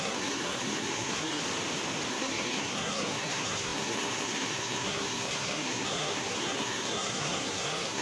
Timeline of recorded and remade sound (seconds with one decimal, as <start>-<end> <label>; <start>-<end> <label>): 0.0-1.4 remade; 1.4-2.1 recorded; 2.1-8.0 remade